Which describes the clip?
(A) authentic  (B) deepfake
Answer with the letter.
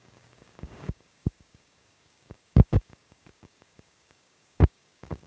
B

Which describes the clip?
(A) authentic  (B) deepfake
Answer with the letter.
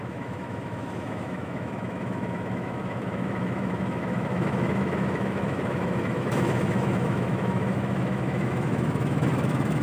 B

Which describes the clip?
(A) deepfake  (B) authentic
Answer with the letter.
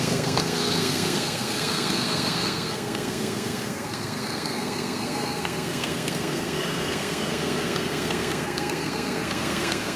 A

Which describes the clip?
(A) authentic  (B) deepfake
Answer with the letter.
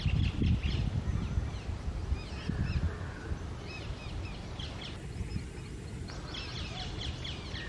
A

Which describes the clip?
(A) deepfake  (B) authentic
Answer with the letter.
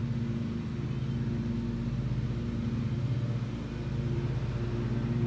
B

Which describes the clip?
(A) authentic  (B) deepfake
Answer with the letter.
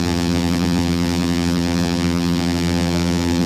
B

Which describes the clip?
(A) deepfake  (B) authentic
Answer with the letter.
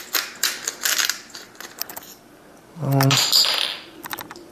B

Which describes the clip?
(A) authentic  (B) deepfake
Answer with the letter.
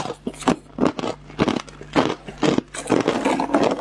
A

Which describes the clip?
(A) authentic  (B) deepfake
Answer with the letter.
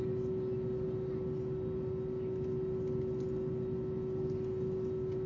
A